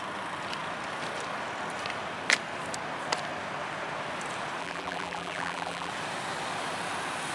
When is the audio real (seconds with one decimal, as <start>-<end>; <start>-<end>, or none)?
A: 0.0-4.6; 5.9-7.3